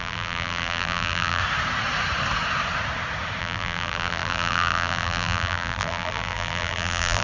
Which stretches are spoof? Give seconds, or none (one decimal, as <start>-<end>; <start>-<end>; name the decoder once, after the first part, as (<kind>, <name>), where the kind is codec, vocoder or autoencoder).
0.0-1.4 (vocoder, BigVGAN v2); 3.4-7.2